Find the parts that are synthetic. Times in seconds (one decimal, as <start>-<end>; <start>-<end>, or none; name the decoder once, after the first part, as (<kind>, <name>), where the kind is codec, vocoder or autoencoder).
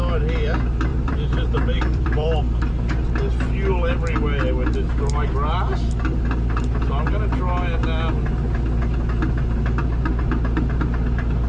0.9-2.4 (vocoder, BigVGAN v2)